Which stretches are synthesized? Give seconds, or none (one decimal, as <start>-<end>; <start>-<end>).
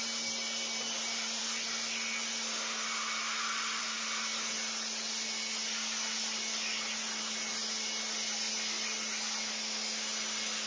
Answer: none